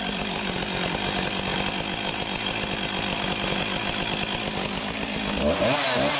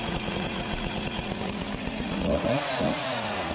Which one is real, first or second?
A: first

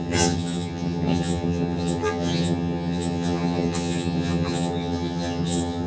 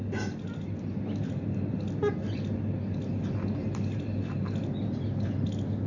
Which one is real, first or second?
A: second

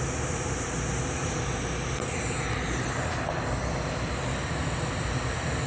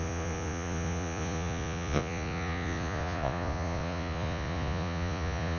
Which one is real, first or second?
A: first